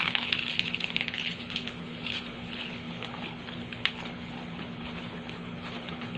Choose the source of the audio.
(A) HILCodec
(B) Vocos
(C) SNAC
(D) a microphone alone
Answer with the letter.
A